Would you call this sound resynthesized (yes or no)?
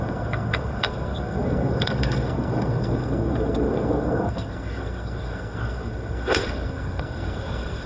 yes